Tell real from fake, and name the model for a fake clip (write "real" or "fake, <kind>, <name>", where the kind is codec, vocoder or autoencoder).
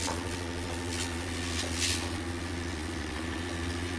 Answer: fake, vocoder, Vocos